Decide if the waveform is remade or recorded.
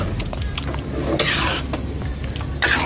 recorded